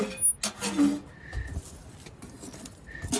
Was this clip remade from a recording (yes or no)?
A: no